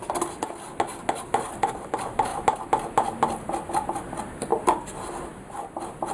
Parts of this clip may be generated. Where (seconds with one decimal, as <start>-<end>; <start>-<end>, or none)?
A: none